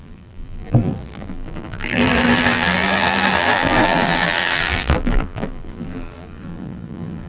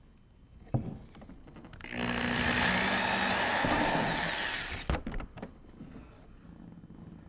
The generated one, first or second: first